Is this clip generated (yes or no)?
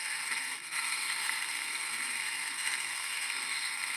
yes